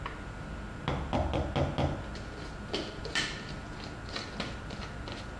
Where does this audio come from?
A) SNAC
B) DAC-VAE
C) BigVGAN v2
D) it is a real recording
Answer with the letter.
D